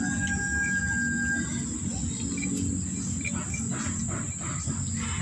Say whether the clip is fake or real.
real